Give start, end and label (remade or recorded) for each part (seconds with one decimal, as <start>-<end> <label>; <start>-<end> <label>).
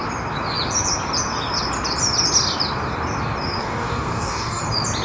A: 0.0-3.6 recorded; 3.6-4.6 remade; 4.6-5.0 recorded